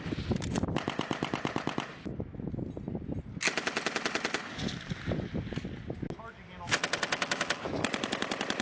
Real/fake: real